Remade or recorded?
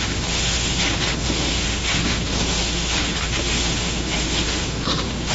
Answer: remade